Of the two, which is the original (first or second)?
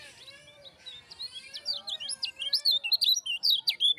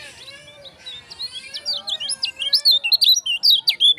second